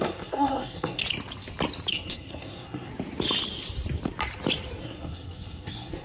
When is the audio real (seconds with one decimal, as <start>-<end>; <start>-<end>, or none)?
1.0-1.9; 2.9-4.8